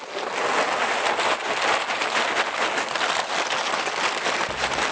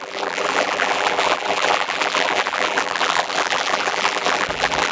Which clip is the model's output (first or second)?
second